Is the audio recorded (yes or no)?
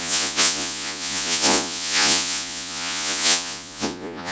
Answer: no